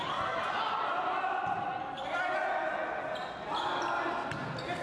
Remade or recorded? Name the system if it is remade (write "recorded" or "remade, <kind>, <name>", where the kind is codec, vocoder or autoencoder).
recorded